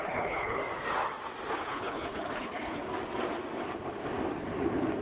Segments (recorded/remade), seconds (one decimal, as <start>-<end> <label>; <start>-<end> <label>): 0.0-0.6 remade; 0.6-1.5 recorded; 1.5-2.8 remade; 2.8-5.0 recorded